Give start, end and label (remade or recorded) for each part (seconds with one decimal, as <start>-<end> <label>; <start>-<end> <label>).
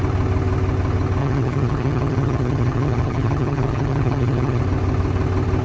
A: 0.0-1.2 recorded; 1.2-4.6 remade; 4.6-5.6 recorded